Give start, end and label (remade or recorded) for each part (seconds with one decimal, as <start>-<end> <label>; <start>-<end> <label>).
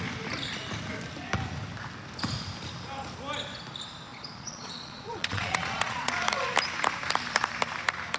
0.0-4.1 recorded; 4.1-6.1 remade; 6.1-8.2 recorded